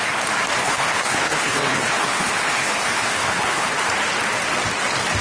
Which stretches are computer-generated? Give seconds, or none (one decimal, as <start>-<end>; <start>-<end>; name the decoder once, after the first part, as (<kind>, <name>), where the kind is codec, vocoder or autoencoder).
0.6-3.7 (codec, HILCodec)